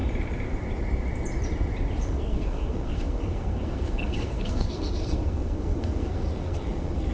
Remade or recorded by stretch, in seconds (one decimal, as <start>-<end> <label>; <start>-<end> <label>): 0.0-2.0 recorded; 2.0-7.1 remade